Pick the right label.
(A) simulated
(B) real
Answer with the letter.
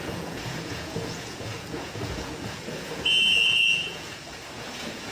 A